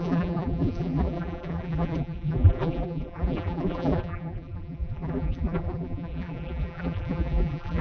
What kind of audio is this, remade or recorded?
remade